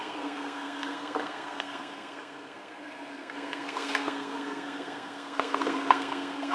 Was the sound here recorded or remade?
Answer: remade